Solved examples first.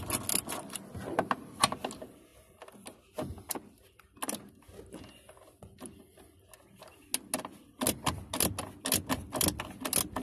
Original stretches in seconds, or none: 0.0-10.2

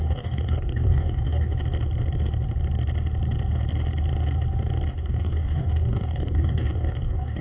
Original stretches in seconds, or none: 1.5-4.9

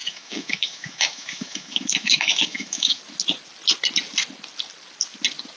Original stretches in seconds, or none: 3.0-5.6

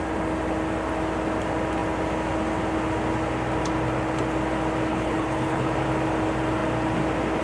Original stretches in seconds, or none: 0.0-4.9; 5.7-7.4

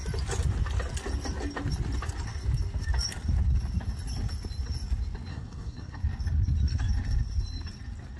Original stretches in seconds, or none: 0.0-5.3; 6.0-8.2

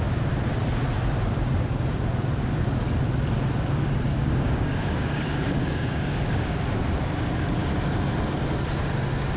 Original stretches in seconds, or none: 0.0-4.1; 6.6-9.4